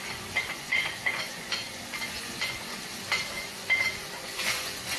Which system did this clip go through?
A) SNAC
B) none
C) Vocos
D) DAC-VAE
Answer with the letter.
C